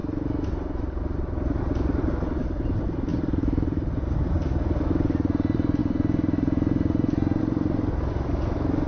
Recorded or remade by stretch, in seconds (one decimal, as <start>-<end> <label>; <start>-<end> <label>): 0.0-3.1 remade; 3.1-4.1 recorded; 4.1-8.9 remade